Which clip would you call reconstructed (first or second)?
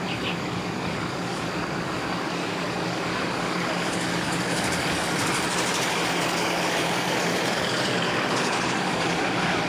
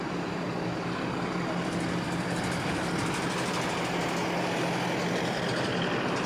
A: first